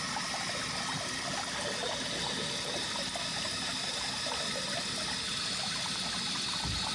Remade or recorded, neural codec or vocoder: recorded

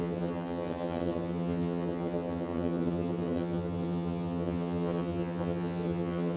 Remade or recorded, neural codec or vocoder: remade, vocoder, HiFi-GAN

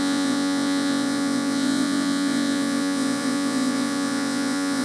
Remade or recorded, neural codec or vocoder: remade, vocoder, Vocos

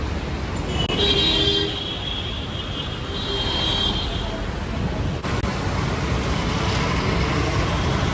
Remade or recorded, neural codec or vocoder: recorded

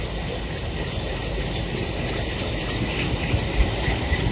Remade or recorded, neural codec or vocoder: recorded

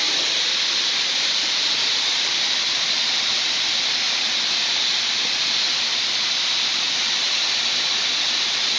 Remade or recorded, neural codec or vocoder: recorded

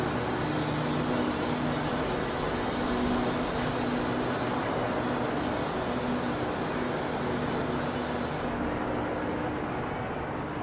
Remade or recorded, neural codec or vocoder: recorded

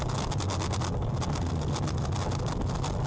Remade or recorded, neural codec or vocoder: recorded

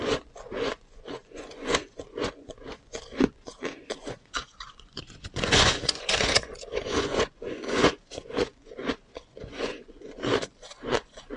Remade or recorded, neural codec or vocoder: remade, vocoder, Vocos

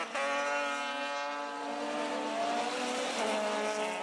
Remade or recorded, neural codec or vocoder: recorded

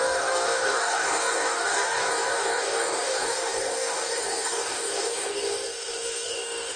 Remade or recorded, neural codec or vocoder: remade, codec, DAC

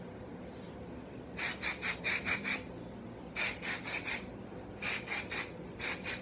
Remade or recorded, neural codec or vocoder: recorded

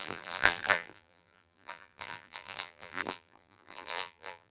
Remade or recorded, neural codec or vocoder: remade, vocoder, BigVGAN v2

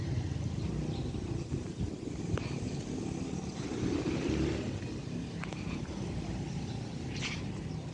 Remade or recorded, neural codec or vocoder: recorded